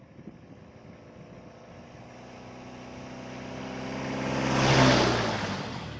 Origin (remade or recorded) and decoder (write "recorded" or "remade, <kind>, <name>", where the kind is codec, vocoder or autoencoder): recorded